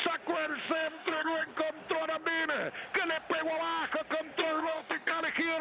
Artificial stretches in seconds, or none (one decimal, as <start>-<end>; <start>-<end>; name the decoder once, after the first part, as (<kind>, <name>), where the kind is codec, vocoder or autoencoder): 0.9-1.5 (codec, DAC); 4.4-5.1